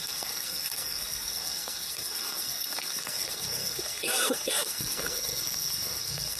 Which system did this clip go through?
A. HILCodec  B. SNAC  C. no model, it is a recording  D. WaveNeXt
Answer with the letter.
B